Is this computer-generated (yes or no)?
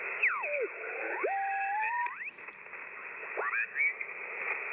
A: no